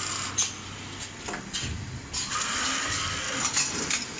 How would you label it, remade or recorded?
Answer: recorded